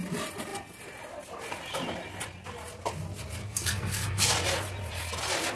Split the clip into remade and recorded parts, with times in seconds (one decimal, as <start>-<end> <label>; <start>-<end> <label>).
0.0-3.4 recorded; 3.4-4.3 remade; 4.3-5.6 recorded